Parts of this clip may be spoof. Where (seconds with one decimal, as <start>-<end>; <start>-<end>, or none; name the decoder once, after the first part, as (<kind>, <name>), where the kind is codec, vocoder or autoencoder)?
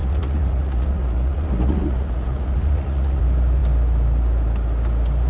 0.0-3.2 (vocoder, Vocos)